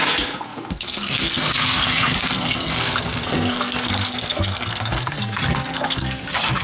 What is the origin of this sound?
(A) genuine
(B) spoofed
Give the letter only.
B